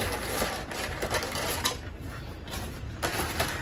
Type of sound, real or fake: fake